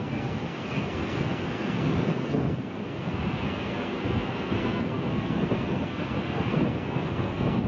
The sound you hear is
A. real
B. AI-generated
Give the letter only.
B